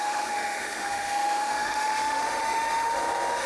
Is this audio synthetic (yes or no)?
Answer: yes